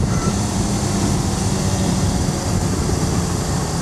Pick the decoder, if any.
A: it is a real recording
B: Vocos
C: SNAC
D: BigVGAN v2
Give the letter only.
D